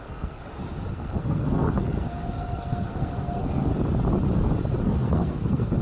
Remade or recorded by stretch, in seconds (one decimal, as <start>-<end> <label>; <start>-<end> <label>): 0.0-0.4 remade; 0.4-0.9 recorded; 0.9-3.7 remade; 3.7-4.8 recorded; 4.8-5.8 remade

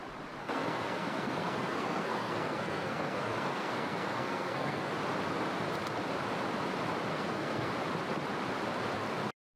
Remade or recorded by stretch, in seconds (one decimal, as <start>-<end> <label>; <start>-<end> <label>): 0.0-0.4 recorded; 0.4-4.9 remade; 4.9-7.1 recorded; 7.1-7.7 remade; 7.7-9.6 recorded

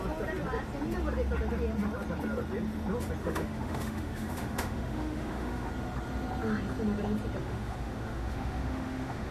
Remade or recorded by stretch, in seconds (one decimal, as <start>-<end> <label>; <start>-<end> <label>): 0.0-3.2 recorded; 3.2-5.7 remade; 5.7-7.4 recorded; 7.4-9.3 remade

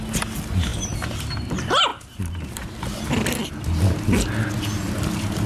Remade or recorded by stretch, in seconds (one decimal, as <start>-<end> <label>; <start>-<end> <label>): 0.0-0.7 recorded; 0.7-1.2 remade; 1.2-1.9 recorded; 1.9-2.9 remade; 2.9-5.5 recorded

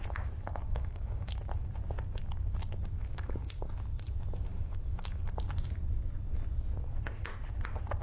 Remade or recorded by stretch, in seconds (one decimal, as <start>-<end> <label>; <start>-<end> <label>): 0.0-0.6 recorded; 0.6-1.3 remade; 1.3-3.0 recorded; 3.0-3.7 remade; 3.7-4.5 recorded; 4.5-5.2 remade; 5.2-8.0 recorded

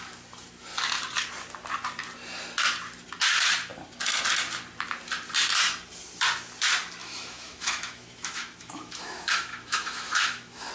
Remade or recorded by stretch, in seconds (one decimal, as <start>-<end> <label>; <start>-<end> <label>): 0.0-7.0 recorded; 7.0-10.7 remade